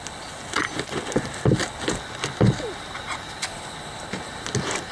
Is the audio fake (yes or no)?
no